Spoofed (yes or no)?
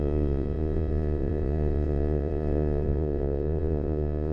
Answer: yes